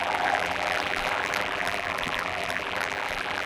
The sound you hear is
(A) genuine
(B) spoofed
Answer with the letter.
B